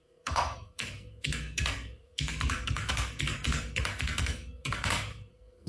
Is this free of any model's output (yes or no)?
no